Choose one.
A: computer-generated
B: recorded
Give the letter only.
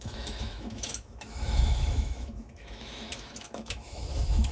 A